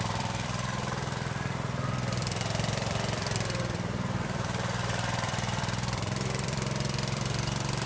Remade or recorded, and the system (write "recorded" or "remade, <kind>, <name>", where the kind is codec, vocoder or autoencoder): remade, vocoder, BigVGAN v2